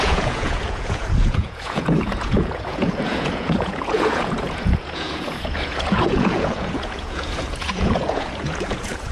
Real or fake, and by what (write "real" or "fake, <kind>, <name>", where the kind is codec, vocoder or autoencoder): fake, vocoder, Vocos